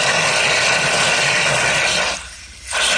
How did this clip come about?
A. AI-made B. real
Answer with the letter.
B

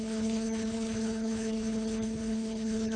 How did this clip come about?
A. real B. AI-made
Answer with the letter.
B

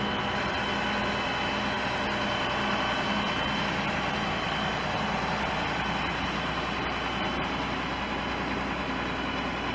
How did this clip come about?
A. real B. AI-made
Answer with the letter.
A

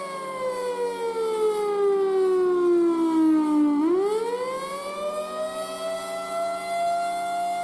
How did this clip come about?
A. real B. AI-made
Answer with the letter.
A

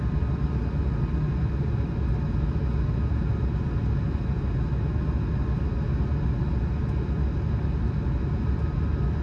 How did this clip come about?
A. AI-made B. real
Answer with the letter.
B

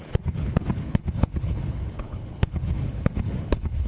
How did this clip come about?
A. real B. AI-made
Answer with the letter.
B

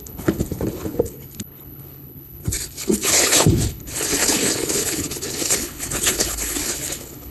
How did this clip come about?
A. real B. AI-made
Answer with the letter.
B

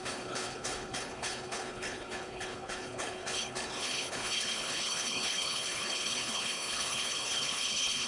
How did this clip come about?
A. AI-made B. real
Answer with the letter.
A